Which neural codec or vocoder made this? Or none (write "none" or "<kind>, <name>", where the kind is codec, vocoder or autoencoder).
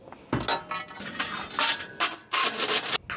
none